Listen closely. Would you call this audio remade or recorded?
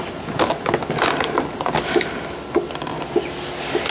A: recorded